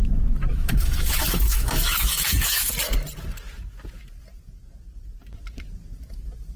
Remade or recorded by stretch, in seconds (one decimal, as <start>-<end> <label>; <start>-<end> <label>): 0.0-0.5 recorded; 0.5-2.7 remade; 2.7-6.6 recorded

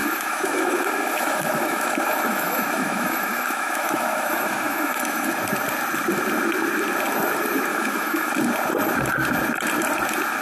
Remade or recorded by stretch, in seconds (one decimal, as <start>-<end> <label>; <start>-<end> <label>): 0.0-5.3 remade; 5.3-7.7 recorded; 7.7-8.3 remade; 8.3-10.4 recorded

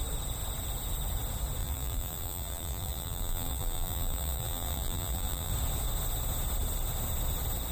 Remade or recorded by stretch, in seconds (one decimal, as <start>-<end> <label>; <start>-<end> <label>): 0.0-1.6 recorded; 1.6-5.5 remade; 5.5-7.7 recorded

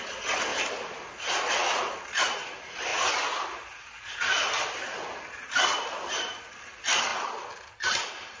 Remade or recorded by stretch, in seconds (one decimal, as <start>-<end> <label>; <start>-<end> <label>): 0.0-8.4 recorded

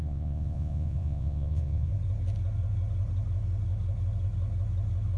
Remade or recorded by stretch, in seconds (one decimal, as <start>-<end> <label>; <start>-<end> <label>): 0.0-1.9 remade; 1.9-5.2 recorded